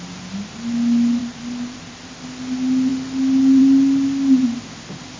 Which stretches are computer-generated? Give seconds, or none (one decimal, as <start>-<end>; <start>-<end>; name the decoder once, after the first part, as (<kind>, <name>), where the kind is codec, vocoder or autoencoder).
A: 1.2-2.2 (vocoder, BigVGAN v2)